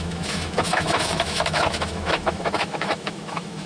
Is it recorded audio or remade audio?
remade